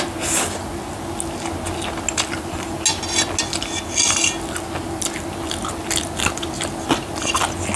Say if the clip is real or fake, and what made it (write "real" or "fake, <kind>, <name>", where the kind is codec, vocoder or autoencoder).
real